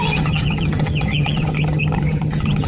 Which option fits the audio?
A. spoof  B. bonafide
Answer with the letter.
A